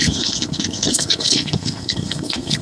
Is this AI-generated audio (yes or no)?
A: yes